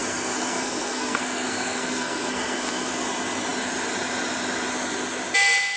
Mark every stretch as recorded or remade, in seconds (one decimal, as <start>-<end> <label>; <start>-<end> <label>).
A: 0.0-2.9 remade; 2.9-5.8 recorded